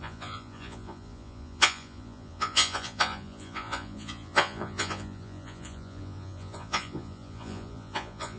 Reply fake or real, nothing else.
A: fake